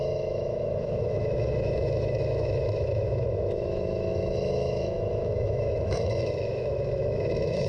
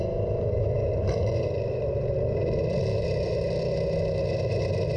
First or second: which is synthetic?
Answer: first